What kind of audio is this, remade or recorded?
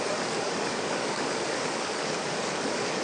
remade